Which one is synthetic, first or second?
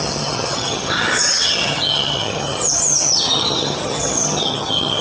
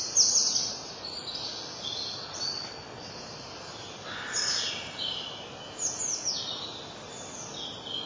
first